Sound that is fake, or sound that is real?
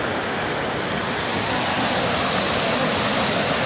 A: real